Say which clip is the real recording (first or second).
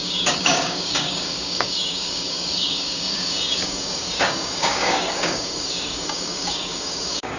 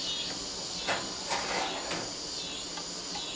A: second